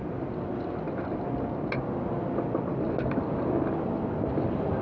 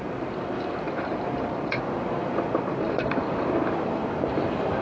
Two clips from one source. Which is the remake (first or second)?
second